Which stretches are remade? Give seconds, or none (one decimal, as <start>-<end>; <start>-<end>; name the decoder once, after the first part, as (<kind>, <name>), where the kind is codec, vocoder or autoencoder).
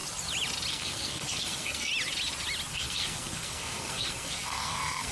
0.7-1.9 (codec, SNAC); 2.7-5.1